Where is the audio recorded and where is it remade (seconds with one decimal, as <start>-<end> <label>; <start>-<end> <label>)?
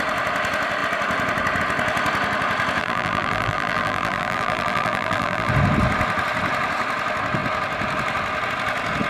0.0-2.8 recorded; 2.8-5.5 remade; 5.5-9.1 recorded